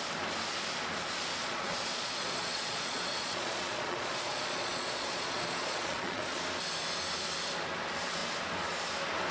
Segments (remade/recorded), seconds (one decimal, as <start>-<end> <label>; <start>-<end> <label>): 0.0-1.4 recorded; 1.4-6.2 remade; 6.2-9.3 recorded